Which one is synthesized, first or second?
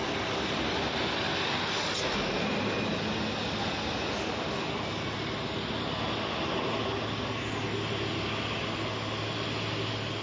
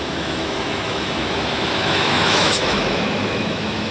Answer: second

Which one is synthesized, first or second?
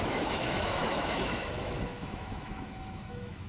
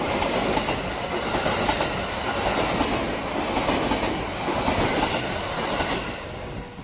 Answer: first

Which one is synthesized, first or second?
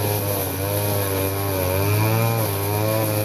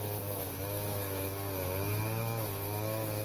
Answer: second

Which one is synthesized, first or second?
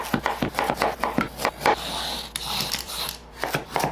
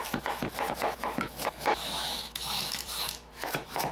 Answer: second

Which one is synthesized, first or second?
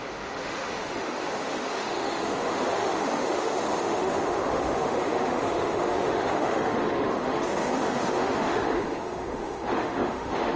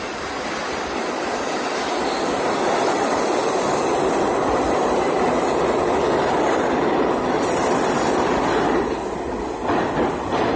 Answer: first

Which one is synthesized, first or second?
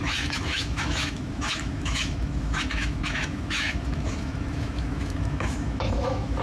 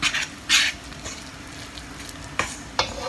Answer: first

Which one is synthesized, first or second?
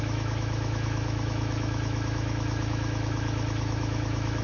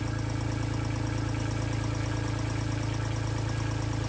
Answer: first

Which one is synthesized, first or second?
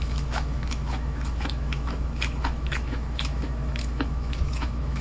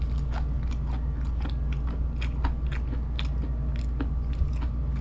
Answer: first